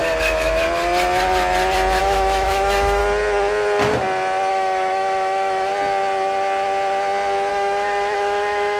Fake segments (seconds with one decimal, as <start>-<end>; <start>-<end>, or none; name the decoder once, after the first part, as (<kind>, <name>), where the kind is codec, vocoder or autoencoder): 2.0-3.0 (autoencoder, DAC-VAE); 4.5-5.7; 7.5-8.8